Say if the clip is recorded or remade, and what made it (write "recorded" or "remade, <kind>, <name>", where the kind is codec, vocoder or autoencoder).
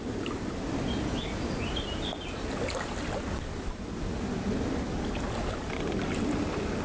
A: recorded